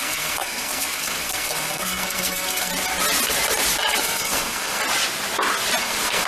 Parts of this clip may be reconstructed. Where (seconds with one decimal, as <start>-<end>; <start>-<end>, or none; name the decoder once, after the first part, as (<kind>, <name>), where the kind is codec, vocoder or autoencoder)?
0.0-2.7 (codec, SNAC); 4.0-4.8; 5.8-6.3